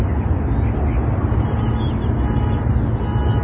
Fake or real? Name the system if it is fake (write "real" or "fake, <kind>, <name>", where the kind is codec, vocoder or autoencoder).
real